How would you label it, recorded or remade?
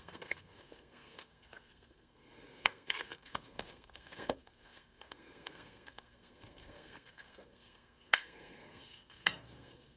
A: remade